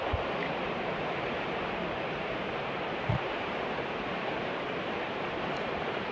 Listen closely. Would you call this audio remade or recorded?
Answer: remade